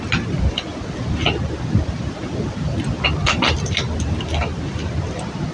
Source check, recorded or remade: recorded